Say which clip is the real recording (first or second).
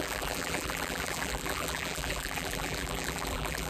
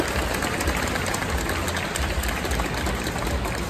second